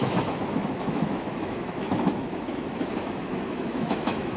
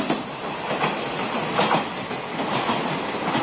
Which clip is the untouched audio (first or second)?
second